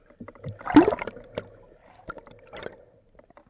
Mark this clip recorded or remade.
recorded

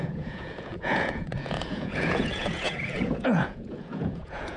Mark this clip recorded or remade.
remade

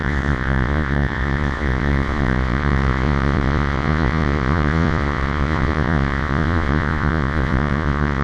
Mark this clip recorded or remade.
remade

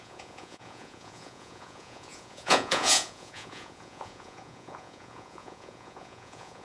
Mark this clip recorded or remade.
remade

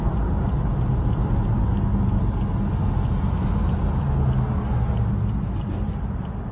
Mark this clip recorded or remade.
recorded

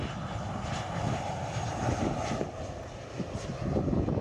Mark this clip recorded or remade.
recorded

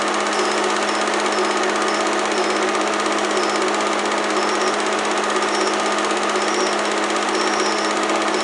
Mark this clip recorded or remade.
recorded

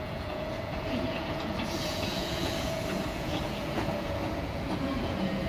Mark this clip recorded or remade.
remade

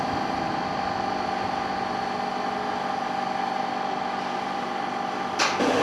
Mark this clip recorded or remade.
recorded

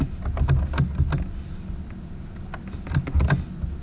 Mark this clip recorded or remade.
recorded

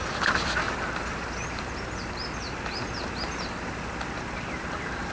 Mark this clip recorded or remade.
recorded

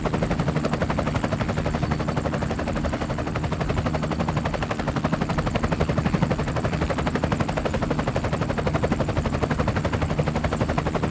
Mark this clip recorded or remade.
recorded